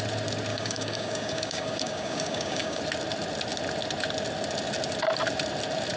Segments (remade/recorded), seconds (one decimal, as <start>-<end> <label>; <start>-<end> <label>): 0.0-0.5 recorded; 0.5-2.8 remade; 2.8-6.0 recorded